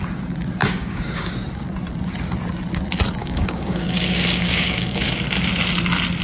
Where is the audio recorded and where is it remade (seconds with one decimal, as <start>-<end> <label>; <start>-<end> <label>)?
0.0-0.6 recorded; 0.6-1.3 remade; 1.3-3.2 recorded; 3.2-5.1 remade; 5.1-6.2 recorded